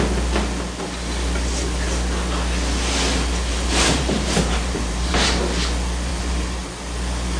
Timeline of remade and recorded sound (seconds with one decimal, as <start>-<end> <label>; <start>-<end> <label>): 0.0-3.5 recorded; 3.5-5.4 remade; 5.4-6.1 recorded; 6.1-6.7 remade; 6.7-7.4 recorded